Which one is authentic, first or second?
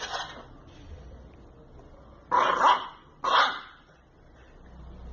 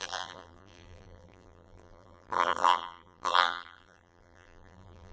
first